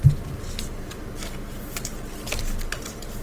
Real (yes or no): yes